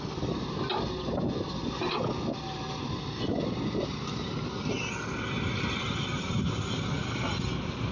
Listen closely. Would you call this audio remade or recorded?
recorded